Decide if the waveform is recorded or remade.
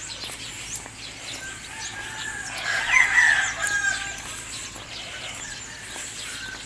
recorded